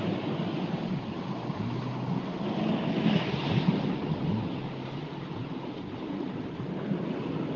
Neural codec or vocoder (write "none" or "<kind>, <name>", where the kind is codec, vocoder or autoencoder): none